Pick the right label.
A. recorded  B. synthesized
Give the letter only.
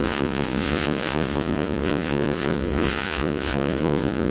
B